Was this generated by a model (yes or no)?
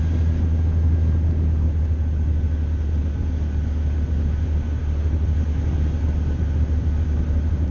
no